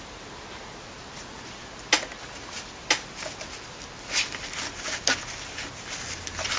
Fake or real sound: real